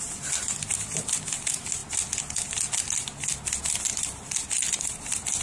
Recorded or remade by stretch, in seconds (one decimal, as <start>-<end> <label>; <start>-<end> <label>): 0.0-0.7 recorded; 0.7-1.2 remade; 1.2-5.4 recorded